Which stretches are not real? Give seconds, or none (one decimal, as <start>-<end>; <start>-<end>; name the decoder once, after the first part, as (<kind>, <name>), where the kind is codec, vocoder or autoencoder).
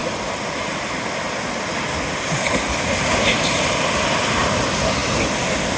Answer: none